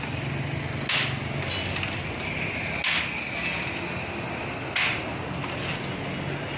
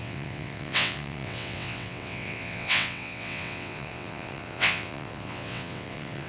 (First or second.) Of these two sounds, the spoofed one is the second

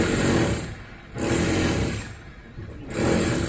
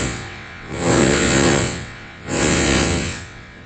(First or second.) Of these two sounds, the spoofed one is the second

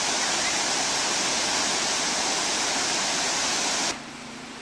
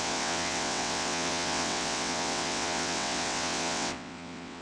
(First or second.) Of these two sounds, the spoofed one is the second